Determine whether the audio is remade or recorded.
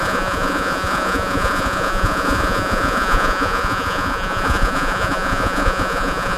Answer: remade